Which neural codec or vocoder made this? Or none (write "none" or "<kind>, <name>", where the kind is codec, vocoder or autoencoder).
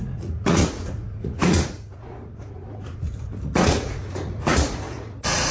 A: vocoder, Vocos